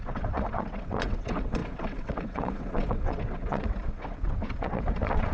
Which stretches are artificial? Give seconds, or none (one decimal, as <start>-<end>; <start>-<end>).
0.0-5.3